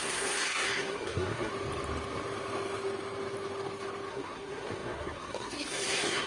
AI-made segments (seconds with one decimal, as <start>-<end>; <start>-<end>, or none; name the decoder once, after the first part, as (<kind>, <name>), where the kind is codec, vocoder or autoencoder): 0.0-1.5 (codec, SNAC); 4.1-6.3